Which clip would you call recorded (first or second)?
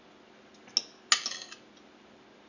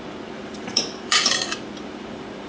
first